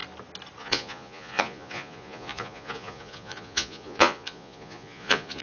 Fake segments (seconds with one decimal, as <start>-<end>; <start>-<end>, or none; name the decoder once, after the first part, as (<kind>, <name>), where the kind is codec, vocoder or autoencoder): 0.6-5.4 (vocoder, Vocos)